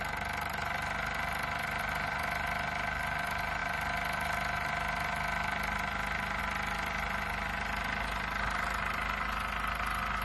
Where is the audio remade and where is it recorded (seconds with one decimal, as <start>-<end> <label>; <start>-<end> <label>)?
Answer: 0.0-10.2 recorded